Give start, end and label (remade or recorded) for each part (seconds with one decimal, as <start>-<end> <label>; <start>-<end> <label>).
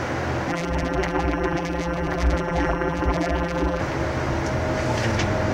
0.0-0.5 recorded; 0.5-3.8 remade; 3.8-5.5 recorded